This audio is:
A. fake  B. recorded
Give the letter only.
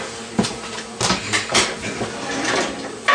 B